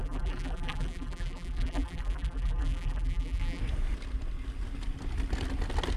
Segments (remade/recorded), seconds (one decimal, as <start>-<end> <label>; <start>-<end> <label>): 0.0-3.6 remade; 3.6-6.0 recorded